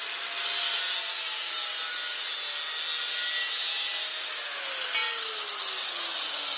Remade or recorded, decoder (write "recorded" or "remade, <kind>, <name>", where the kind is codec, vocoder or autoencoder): recorded